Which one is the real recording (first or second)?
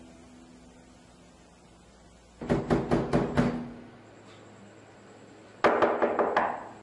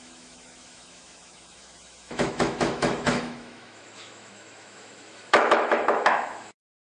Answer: first